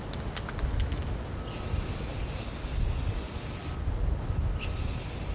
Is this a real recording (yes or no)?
yes